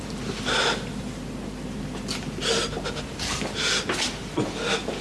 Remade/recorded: recorded